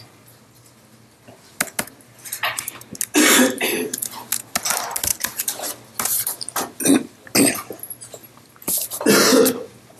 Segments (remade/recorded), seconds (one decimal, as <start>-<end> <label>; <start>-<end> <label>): 0.0-5.1 recorded; 5.1-5.7 remade; 5.7-10.0 recorded